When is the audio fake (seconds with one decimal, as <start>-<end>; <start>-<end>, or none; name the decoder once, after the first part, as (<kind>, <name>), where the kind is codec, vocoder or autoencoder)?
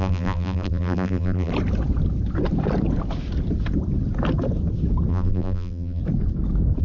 0.0-1.5 (vocoder, BigVGAN v2); 5.1-6.0